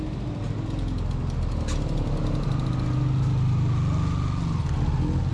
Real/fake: real